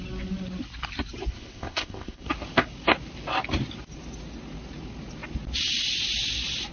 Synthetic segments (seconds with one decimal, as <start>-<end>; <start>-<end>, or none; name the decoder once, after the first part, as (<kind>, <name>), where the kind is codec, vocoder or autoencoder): 1.3-2.2 (codec, ZipCodec)